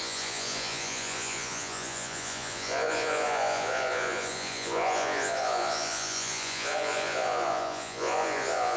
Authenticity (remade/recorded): remade